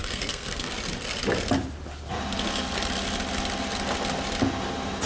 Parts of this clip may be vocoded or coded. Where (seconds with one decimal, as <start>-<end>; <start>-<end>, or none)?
0.0-0.7